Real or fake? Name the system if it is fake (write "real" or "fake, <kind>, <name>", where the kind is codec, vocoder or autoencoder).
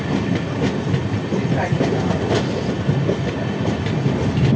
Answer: real